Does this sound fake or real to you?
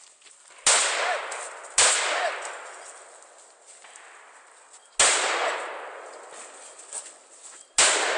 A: real